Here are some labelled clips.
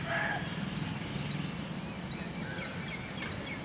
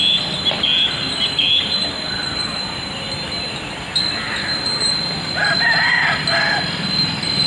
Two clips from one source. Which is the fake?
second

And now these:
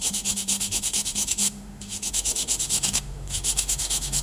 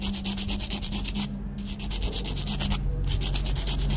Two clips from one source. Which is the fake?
first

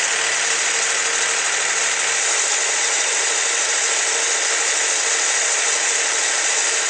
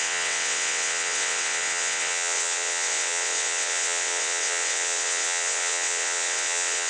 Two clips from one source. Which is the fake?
second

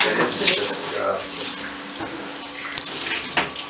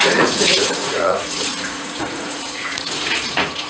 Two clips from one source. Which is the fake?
second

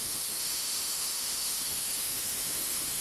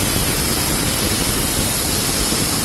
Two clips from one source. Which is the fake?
first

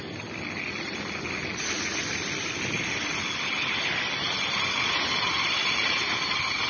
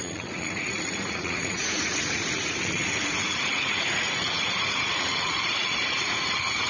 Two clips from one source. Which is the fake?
second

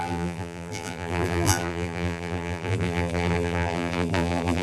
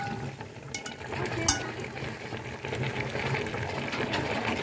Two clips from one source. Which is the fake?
first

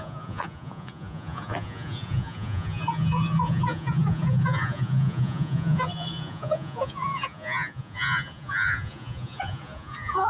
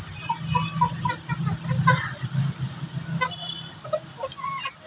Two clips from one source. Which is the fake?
first